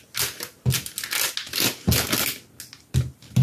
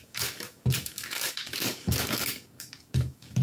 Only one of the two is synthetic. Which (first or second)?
second